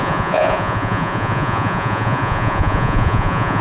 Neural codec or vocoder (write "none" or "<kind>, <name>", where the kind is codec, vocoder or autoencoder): vocoder, Vocos